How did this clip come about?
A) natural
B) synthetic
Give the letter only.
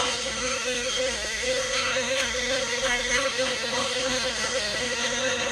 B